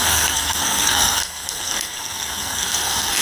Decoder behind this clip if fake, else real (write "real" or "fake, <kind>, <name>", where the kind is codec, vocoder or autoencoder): fake, codec, SNAC